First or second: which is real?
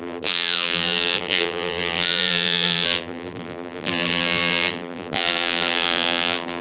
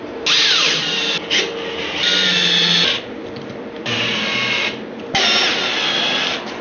second